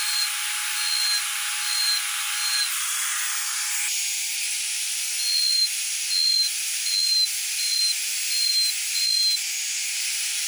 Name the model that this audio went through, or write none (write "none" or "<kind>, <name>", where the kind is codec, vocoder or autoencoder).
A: none